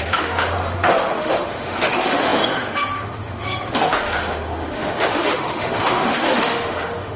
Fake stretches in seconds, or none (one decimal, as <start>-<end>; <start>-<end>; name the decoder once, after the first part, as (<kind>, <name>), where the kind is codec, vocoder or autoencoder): 0.0-7.2 (autoencoder, DAC-VAE)